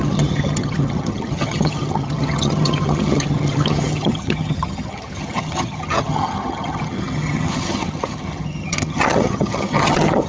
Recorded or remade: remade